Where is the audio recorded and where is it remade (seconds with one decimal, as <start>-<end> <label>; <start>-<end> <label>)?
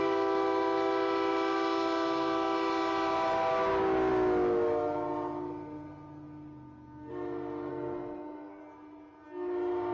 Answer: 0.0-7.7 recorded; 7.7-8.6 remade; 8.6-9.9 recorded